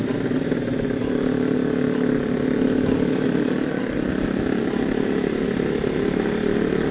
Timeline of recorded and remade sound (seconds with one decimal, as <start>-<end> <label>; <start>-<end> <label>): 0.0-6.9 recorded